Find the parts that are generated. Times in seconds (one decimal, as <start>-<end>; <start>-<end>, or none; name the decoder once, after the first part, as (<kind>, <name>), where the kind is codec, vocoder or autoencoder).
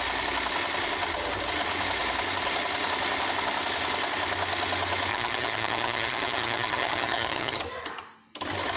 5.1-7.6 (vocoder, HiFi-GAN)